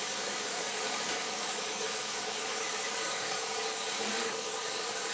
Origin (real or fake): fake